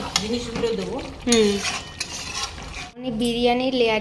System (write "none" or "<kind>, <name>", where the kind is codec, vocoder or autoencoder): none